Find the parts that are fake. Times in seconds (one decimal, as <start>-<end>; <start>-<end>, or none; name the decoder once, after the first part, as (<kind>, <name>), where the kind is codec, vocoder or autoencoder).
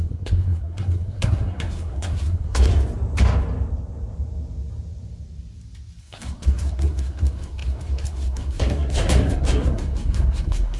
0.0-2.7 (codec, SNAC); 6.0-10.8